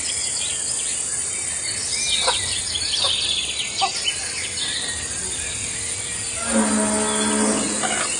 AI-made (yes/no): no